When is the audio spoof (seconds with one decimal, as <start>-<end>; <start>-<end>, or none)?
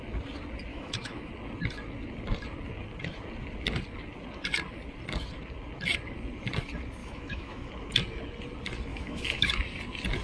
0.7-1.3; 7.0-7.7; 8.9-9.5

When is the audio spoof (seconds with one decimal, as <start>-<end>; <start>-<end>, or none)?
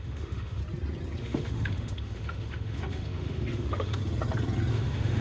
0.0-0.6; 1.2-4.0; 4.7-5.2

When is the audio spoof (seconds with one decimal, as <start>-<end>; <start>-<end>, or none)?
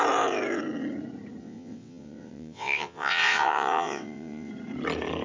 1.4-4.5